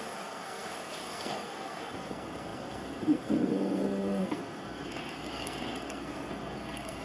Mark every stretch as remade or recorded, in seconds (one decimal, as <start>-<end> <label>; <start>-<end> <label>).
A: 0.0-7.0 remade